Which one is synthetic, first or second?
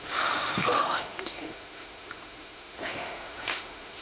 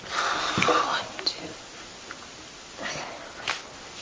first